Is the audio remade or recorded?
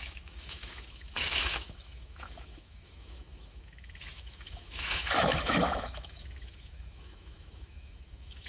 remade